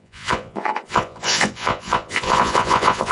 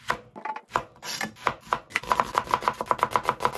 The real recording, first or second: second